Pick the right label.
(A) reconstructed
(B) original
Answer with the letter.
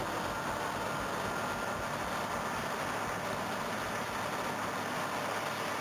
B